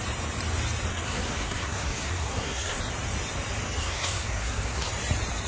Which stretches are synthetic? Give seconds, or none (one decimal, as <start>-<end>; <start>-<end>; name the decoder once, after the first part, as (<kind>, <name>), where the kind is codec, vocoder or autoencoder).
0.9-2.8 (codec, SNAC); 3.8-4.9